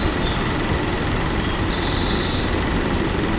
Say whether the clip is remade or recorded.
recorded